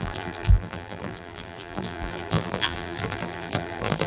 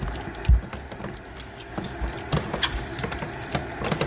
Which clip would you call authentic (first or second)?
second